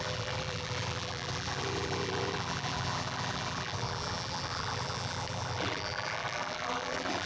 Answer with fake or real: fake